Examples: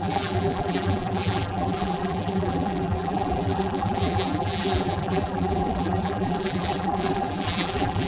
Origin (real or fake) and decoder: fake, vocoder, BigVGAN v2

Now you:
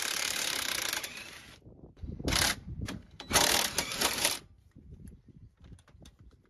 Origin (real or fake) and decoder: fake, vocoder, BigVGAN v2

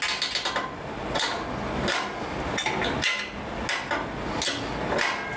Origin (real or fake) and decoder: real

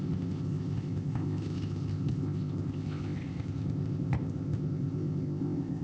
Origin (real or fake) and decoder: fake, codec, ZipCodec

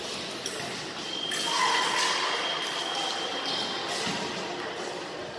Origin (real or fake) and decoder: real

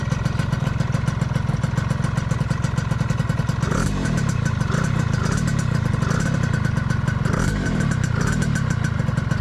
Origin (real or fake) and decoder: real